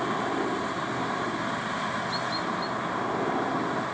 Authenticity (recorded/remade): recorded